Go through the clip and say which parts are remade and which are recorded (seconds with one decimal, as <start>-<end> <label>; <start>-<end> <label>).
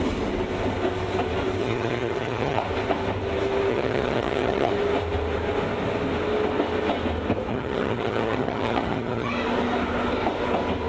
0.0-1.6 recorded; 1.6-2.6 remade; 2.6-3.7 recorded; 3.7-4.7 remade; 4.7-7.5 recorded; 7.5-9.3 remade; 9.3-10.9 recorded